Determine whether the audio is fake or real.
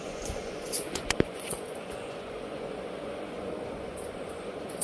fake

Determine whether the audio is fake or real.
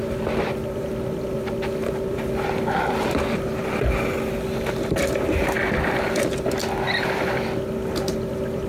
real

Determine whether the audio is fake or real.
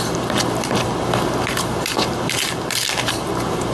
real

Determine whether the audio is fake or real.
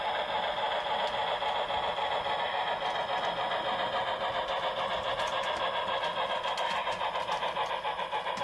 real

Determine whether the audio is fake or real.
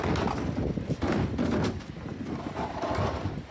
real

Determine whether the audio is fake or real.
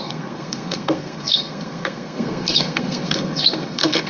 fake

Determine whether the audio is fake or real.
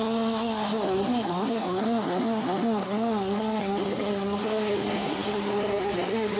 fake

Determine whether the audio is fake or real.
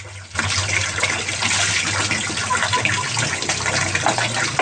real